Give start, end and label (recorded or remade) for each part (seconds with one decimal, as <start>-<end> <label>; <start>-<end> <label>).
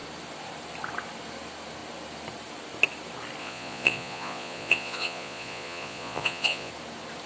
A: 0.0-3.4 recorded; 3.4-6.7 remade; 6.7-7.3 recorded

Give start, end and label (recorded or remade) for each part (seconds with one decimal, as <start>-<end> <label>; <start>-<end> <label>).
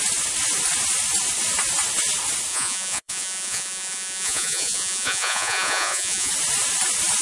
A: 0.0-2.5 recorded; 2.5-6.3 remade; 6.3-7.2 recorded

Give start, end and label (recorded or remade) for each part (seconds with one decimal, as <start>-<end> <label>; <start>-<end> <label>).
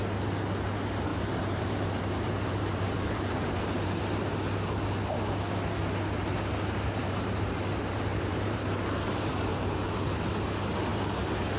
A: 0.0-1.1 recorded; 1.1-4.0 remade; 4.0-7.0 recorded; 7.0-8.6 remade; 8.6-9.5 recorded; 9.5-10.3 remade; 10.3-11.6 recorded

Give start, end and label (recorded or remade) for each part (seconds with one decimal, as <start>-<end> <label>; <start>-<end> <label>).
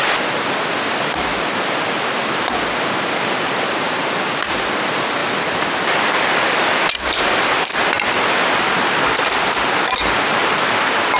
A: 0.0-11.2 recorded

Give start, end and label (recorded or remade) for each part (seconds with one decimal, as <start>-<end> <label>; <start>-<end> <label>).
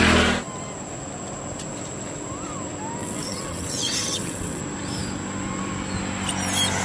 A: 0.0-3.0 recorded; 3.0-4.6 remade; 4.6-6.8 recorded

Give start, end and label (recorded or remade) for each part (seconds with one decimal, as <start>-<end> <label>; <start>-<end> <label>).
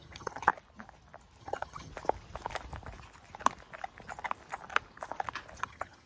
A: 0.0-0.5 remade; 0.5-1.4 recorded; 1.4-1.9 remade; 1.9-5.6 recorded; 5.6-6.1 remade